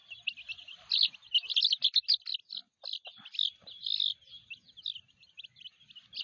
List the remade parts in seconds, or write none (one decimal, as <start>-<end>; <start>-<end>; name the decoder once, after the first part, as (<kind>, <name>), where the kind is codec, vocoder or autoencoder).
none